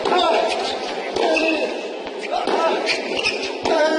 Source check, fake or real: fake